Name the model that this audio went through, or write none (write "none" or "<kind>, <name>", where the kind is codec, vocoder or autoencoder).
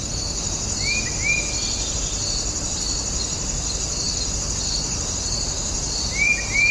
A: none